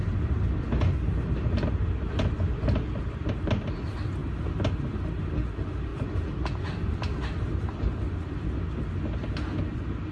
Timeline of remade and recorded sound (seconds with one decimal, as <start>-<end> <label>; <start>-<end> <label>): 0.0-5.9 recorded; 5.9-7.3 remade; 7.3-10.1 recorded